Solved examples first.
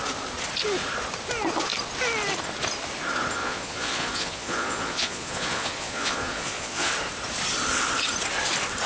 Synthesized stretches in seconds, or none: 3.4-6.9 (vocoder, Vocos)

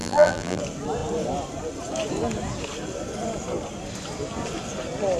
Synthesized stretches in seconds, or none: 0.0-0.6 (vocoder, BigVGAN v2)

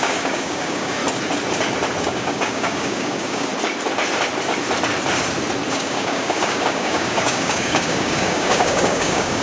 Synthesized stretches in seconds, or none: 0.0-1.0 (codec, DAC); 2.0-3.5; 5.7-9.4

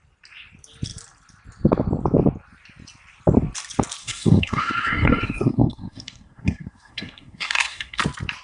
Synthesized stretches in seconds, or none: 4.0-8.0 (codec, SNAC)

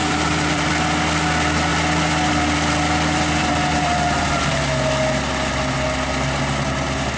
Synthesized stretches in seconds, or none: 0.0-0.7 (vocoder, BigVGAN v2); 3.4-4.5

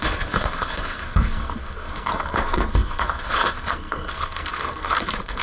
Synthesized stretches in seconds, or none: 0.0-5.4 (codec, SNAC)

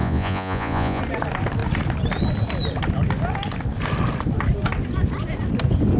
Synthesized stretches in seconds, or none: 0.0-1.0 (vocoder, Vocos)